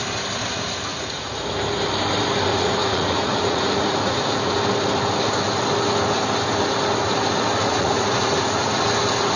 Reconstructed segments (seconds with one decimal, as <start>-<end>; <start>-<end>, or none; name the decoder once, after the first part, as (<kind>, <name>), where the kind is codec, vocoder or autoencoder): 0.9-1.5 (vocoder, Vocos); 2.5-4.5; 7.6-8.8